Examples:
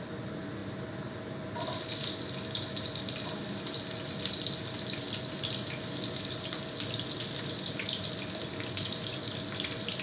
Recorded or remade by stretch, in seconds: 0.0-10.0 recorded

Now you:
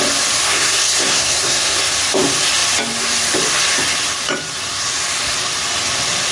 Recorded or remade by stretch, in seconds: 0.0-0.4 recorded; 0.4-1.9 remade; 1.9-6.3 recorded

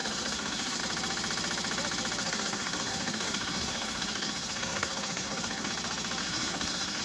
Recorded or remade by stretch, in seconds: 0.0-0.8 remade; 0.8-2.2 recorded; 2.2-5.7 remade; 5.7-6.2 recorded; 6.2-7.0 remade

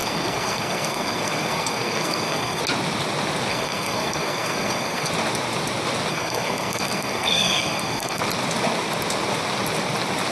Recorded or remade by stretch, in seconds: 0.0-2.6 remade; 2.6-3.5 recorded; 3.5-5.1 remade; 5.1-6.1 recorded; 6.1-8.2 remade; 8.2-10.3 recorded